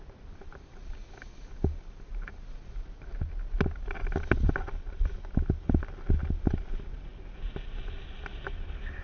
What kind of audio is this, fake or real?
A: real